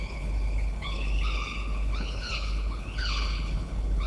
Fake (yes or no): yes